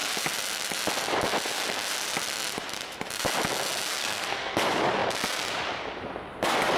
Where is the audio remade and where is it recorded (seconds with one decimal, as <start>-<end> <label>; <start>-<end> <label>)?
0.0-4.0 recorded; 4.0-4.6 remade; 4.6-6.8 recorded